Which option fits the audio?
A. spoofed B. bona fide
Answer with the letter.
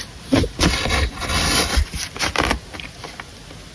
B